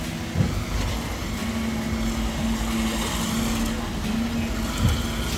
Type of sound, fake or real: real